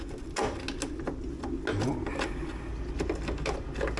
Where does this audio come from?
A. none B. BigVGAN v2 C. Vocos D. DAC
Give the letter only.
A